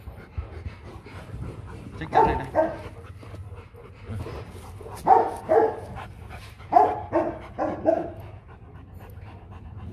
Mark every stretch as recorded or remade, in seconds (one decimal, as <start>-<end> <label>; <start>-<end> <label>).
0.0-9.9 recorded